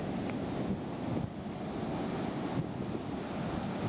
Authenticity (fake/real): real